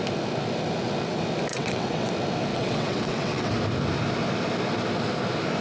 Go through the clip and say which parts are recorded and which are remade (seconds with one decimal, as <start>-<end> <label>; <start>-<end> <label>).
0.0-1.5 recorded; 1.5-2.1 remade; 2.1-2.5 recorded; 2.5-3.5 remade; 3.5-5.6 recorded

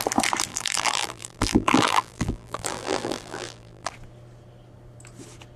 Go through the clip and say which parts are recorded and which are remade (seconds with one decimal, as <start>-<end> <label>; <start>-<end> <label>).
0.0-0.5 recorded; 0.5-3.9 remade; 3.9-5.6 recorded

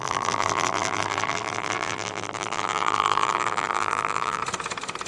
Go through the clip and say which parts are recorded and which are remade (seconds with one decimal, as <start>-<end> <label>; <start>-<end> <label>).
0.0-4.4 remade; 4.4-5.1 recorded

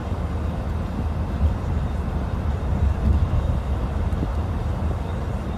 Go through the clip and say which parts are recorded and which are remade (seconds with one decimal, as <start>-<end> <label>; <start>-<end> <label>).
0.0-1.4 recorded; 1.4-2.7 remade; 2.7-4.4 recorded; 4.4-5.6 remade

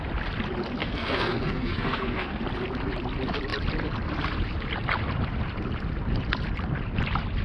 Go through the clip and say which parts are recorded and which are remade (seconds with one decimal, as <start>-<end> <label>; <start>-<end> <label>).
0.0-0.8 recorded; 0.8-2.4 remade; 2.4-7.4 recorded

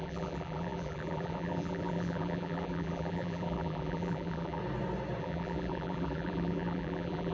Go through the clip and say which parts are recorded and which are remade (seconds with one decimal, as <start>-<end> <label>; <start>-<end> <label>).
0.0-4.6 remade; 4.6-5.2 recorded; 5.2-7.3 remade

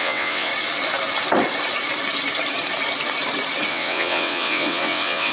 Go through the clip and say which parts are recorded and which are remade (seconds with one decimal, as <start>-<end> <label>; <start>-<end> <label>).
0.0-0.5 remade; 0.5-3.7 recorded; 3.7-5.3 remade

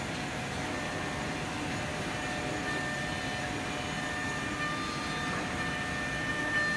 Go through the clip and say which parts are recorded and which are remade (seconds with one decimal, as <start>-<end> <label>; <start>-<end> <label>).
0.0-6.8 recorded